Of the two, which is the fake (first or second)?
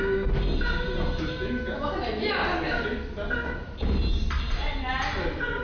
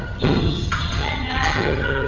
second